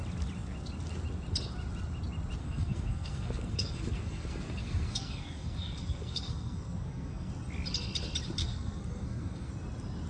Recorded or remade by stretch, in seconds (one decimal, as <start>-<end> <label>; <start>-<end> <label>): 0.0-2.4 recorded; 2.4-7.3 remade; 7.3-8.4 recorded; 8.4-9.5 remade; 9.5-10.1 recorded